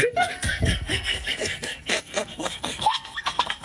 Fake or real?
fake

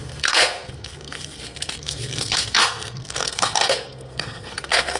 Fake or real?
fake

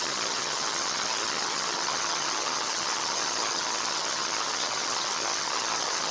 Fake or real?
fake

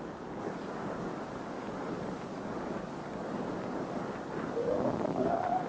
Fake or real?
fake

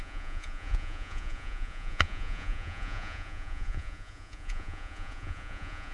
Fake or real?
fake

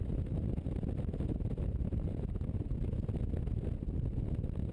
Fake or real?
real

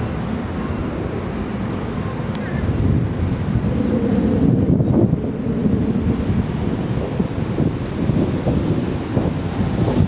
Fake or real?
real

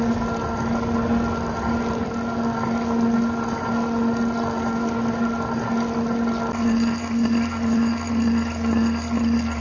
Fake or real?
real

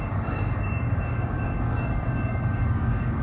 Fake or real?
fake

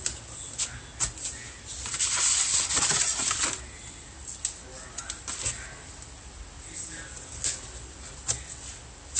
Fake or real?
real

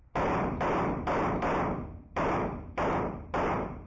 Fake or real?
real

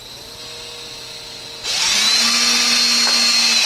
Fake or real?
real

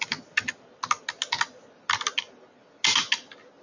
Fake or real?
real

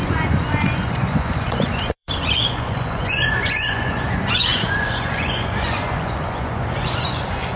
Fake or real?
fake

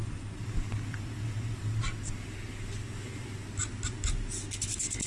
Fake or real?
real